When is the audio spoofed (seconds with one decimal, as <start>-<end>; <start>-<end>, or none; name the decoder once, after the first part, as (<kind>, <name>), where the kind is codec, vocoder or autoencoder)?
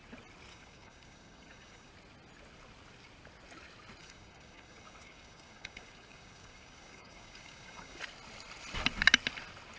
0.5-1.9 (codec, DAC); 4.0-8.0